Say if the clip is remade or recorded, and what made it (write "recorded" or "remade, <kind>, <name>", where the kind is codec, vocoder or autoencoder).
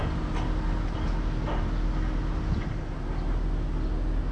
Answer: recorded